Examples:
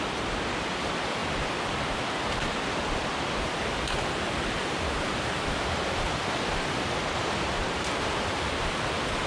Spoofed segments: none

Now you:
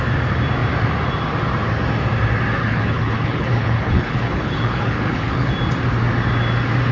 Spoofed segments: 2.6-5.5

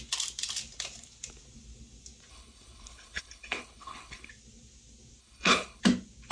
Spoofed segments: 2.3-4.3; 5.2-5.8

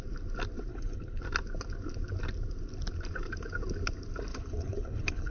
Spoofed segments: 0.7-1.2; 4.3-5.3

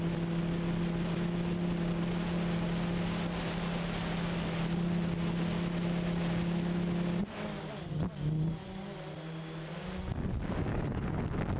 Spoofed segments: 10.7-11.2